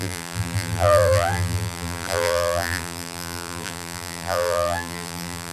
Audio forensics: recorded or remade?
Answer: remade